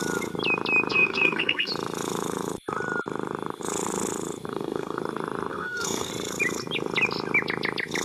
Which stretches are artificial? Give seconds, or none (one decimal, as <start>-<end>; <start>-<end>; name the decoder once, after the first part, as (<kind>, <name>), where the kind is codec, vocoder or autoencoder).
0.9-1.7 (codec, SNAC); 4.5-5.0; 5.5-6.1